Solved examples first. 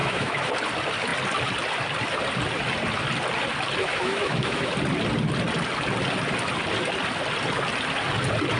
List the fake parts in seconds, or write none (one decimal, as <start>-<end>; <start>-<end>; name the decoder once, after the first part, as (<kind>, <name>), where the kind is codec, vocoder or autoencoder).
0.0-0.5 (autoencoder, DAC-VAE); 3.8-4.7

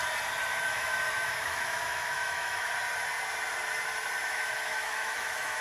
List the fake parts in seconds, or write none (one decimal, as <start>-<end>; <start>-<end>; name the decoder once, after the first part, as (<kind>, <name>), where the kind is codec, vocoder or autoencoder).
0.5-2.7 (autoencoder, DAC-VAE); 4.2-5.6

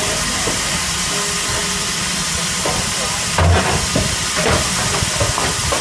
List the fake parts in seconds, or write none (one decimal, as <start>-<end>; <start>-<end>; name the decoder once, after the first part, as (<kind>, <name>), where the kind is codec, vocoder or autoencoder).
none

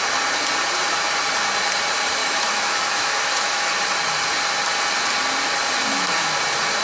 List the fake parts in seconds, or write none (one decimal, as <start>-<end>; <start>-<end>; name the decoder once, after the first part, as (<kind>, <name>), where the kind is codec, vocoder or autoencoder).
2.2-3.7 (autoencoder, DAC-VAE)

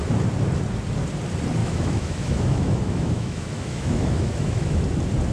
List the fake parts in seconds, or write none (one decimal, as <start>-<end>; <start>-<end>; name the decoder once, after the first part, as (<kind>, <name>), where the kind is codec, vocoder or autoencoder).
1.6-4.8 (autoencoder, DAC-VAE)

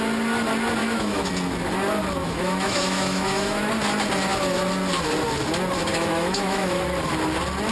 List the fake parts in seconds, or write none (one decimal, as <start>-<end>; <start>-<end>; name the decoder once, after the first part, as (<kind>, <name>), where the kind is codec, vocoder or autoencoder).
0.8-1.3 (autoencoder, DAC-VAE); 2.2-3.7; 5.9-6.8